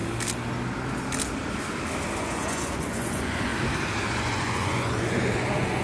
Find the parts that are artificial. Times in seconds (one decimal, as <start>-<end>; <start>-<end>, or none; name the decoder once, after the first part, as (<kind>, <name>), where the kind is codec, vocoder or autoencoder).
2.2-3.5 (vocoder, Vocos); 4.1-5.8